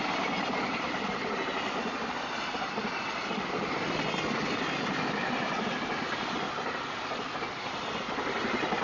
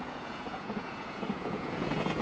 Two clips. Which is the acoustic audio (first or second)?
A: first